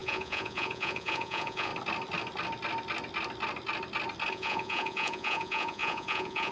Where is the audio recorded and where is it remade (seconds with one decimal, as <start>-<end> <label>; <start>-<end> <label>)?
0.0-1.7 remade; 1.7-4.3 recorded; 4.3-6.5 remade